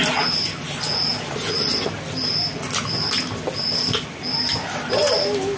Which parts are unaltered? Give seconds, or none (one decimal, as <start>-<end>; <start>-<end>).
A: 0.0-5.6